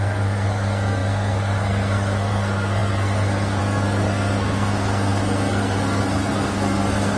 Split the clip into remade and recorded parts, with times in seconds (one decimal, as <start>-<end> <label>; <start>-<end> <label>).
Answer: 0.0-7.2 remade